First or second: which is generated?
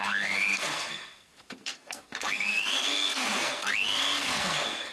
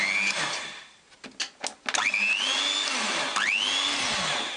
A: first